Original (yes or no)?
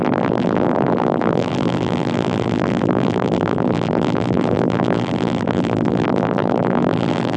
no